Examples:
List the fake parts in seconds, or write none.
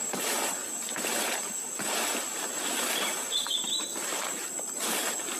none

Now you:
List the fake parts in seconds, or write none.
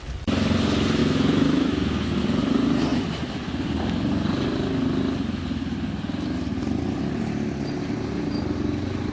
1.0-2.2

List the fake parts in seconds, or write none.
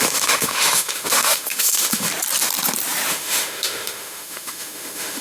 0.0-2.1; 3.1-5.2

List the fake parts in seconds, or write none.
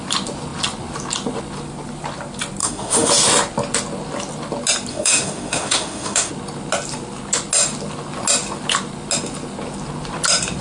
2.6-3.1; 4.9-6.3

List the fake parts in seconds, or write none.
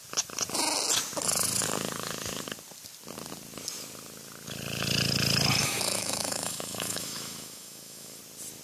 5.6-8.2